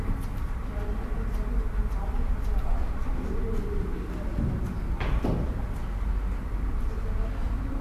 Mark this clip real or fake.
real